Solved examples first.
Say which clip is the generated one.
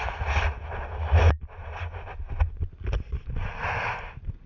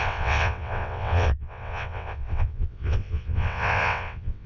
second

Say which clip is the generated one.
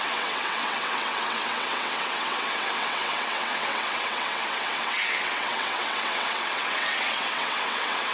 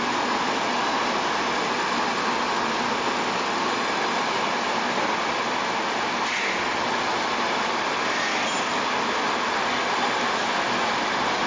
first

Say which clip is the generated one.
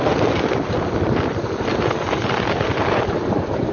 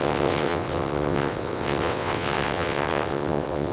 second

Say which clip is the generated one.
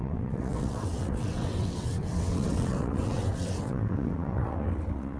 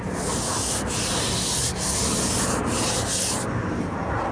first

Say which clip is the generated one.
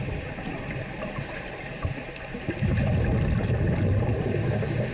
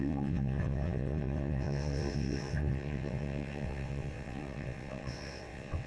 second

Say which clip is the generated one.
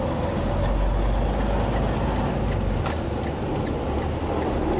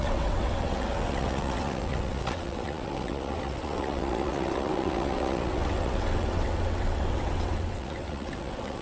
second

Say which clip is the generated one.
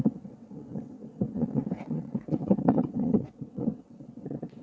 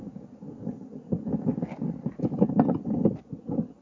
first